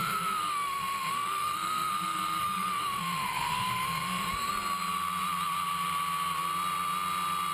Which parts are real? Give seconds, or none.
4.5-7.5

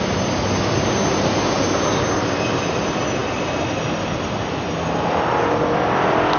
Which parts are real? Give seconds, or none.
0.0-6.4

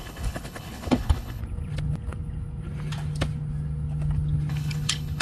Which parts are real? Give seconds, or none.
1.4-4.5

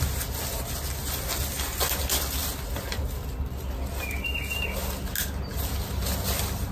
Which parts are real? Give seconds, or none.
0.0-6.7